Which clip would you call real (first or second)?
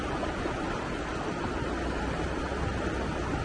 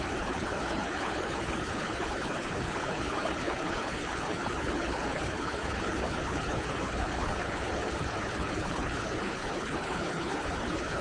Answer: first